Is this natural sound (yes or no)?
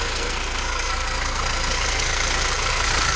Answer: no